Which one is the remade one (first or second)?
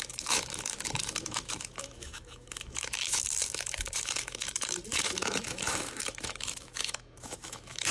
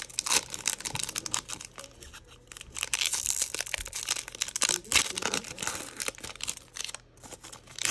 first